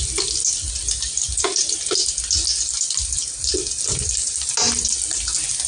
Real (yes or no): yes